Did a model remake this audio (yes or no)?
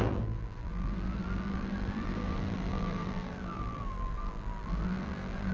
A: yes